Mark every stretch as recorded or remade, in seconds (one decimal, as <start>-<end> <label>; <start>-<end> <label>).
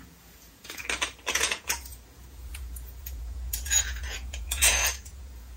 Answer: 0.0-0.8 remade; 0.8-1.3 recorded; 1.3-5.6 remade